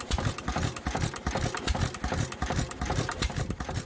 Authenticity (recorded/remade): remade